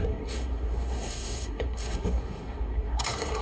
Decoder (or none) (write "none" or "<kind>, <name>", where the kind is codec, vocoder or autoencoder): codec, SNAC